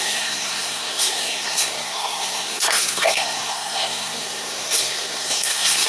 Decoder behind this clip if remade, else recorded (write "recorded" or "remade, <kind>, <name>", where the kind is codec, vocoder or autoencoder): remade, codec, SNAC